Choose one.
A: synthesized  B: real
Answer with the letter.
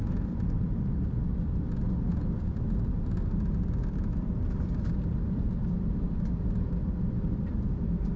A